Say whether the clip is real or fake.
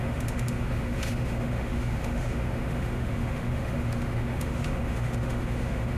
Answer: fake